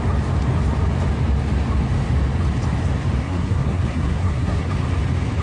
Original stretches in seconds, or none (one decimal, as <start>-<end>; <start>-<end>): 0.0-3.2; 4.7-5.4